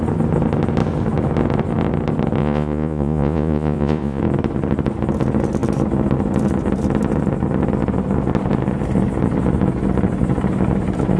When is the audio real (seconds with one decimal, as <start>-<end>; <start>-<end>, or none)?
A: 0.0-2.4; 4.2-11.2